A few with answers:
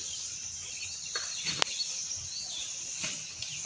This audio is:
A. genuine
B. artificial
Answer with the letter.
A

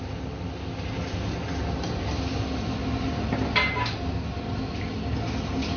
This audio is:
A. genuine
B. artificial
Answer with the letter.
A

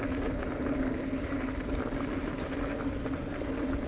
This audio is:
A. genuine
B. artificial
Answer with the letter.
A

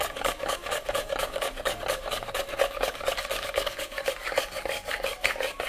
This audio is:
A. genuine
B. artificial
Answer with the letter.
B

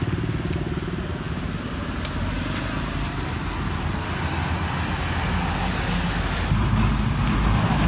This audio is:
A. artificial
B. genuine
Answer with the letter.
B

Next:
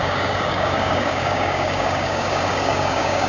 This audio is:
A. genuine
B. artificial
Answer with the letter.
B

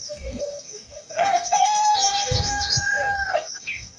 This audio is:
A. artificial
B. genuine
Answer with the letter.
A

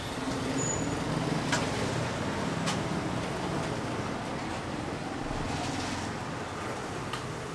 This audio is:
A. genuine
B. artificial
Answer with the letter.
A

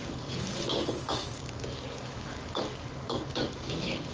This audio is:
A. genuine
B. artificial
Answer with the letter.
B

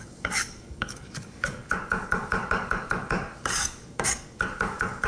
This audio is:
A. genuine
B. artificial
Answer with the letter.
B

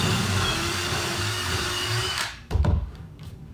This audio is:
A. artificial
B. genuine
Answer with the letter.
A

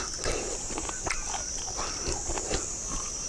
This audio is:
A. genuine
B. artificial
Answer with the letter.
A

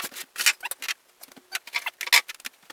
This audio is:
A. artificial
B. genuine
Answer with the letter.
B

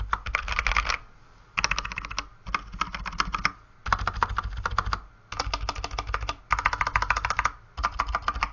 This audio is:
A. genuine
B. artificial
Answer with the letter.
A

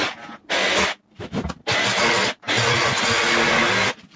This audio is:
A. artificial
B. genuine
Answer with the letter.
B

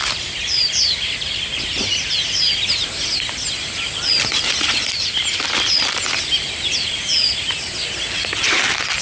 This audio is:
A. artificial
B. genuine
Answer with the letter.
B